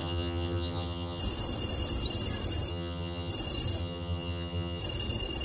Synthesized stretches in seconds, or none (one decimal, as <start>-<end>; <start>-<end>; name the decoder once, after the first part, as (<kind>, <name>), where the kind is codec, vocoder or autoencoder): 0.0-1.2 (vocoder, HiFi-GAN); 2.7-3.3; 3.8-4.8